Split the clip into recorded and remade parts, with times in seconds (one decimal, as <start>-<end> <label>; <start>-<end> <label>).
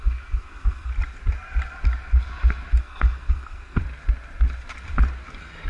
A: 0.0-0.9 remade; 0.9-2.8 recorded; 2.8-3.8 remade; 3.8-5.7 recorded